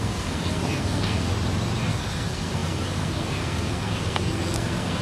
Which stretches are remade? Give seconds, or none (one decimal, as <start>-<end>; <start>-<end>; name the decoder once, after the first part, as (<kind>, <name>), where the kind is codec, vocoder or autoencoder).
0.0-1.3 (codec, SNAC); 1.9-5.0

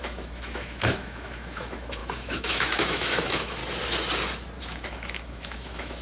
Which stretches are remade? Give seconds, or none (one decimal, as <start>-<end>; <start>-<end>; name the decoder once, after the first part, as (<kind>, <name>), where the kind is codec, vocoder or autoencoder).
0.0-3.6 (autoencoder, DAC-VAE); 4.6-6.0

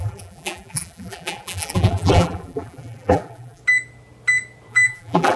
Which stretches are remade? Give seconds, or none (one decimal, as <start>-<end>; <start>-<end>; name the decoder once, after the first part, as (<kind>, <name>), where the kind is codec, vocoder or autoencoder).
0.0-3.6 (vocoder, BigVGAN v2); 4.7-5.4

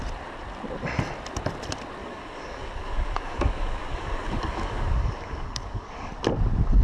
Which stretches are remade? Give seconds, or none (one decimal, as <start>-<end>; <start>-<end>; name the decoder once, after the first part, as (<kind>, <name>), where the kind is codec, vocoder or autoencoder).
2.0-6.1 (codec, DAC)

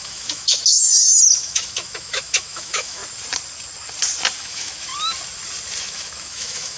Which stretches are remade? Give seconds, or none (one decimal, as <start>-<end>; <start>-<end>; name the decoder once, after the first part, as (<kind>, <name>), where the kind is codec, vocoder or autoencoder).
0.0-0.9 (autoencoder, DAC-VAE); 1.4-3.0; 4.4-4.9; 5.8-6.8

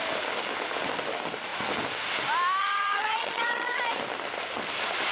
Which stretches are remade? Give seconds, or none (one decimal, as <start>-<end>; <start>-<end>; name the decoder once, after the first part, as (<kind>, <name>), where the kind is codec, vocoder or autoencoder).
2.6-3.8 (vocoder, HiFi-GAN)